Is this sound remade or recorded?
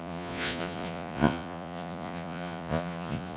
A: remade